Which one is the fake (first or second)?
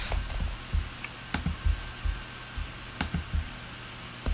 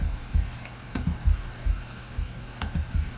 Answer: second